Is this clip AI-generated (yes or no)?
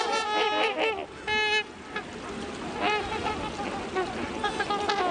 no